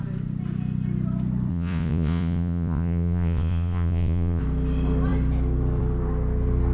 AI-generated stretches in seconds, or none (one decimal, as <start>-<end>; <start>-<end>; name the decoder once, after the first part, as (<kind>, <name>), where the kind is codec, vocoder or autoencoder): 1.5-4.4 (vocoder, Vocos)